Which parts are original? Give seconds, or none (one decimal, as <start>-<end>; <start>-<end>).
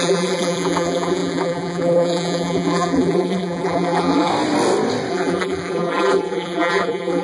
4.3-5.1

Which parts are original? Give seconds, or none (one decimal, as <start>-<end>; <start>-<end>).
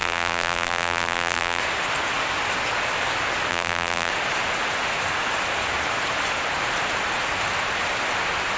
1.6-3.5; 4.1-8.6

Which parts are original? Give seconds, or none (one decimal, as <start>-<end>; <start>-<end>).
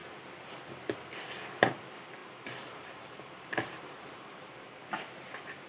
0.0-2.2; 4.5-5.7